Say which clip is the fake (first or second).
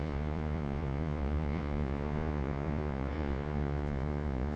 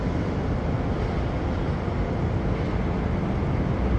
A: first